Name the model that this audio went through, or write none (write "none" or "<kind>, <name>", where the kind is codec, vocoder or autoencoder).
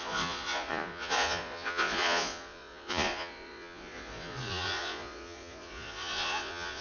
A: vocoder, Vocos